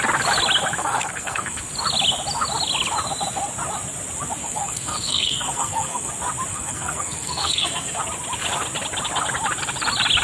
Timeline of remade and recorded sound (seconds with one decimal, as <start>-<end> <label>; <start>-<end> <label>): 0.0-0.8 recorded; 0.8-1.6 remade; 1.6-4.4 recorded; 4.4-6.1 remade; 6.1-6.5 recorded; 6.5-8.0 remade; 8.0-10.2 recorded

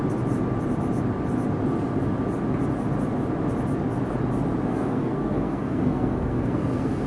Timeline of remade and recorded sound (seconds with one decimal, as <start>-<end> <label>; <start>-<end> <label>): 0.0-4.7 recorded; 4.7-7.1 remade

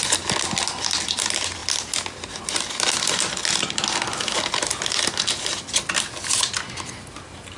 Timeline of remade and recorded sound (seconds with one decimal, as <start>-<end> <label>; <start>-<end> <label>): 0.0-7.6 recorded

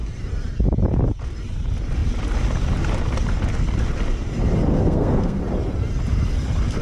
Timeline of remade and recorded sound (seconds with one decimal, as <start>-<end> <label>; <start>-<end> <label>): 0.0-4.7 recorded; 4.7-5.4 remade; 5.4-6.8 recorded

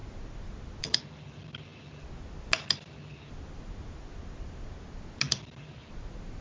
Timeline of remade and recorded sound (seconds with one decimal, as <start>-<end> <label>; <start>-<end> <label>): 0.0-6.4 recorded

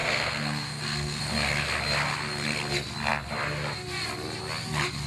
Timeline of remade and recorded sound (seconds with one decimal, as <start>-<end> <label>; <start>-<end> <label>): 0.0-1.2 remade; 1.2-5.1 recorded